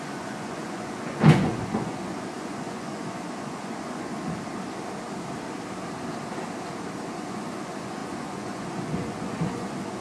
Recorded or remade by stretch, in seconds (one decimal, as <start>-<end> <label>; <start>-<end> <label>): 0.0-4.1 remade; 4.1-7.1 recorded; 7.1-10.0 remade